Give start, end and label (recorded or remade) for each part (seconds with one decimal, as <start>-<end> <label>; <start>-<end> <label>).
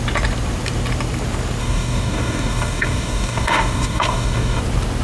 0.0-1.6 recorded; 1.6-4.6 remade; 4.6-5.0 recorded